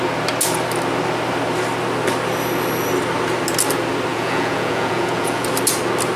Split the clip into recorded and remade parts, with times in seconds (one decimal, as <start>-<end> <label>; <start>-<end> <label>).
0.0-4.1 recorded; 4.1-5.5 remade; 5.5-6.2 recorded